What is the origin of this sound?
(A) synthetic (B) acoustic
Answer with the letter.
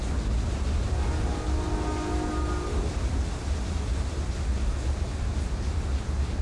B